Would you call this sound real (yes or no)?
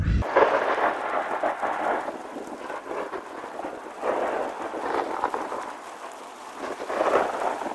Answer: yes